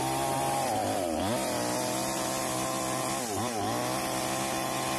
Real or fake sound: real